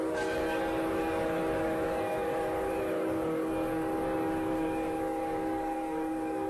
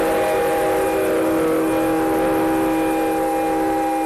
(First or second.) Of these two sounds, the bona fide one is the second